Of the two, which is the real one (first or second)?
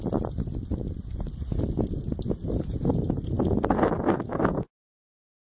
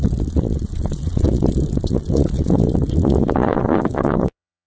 first